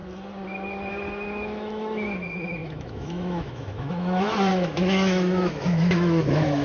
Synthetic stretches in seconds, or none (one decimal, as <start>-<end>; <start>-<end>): 0.9-6.6